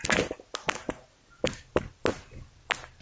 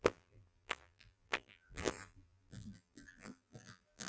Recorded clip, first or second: first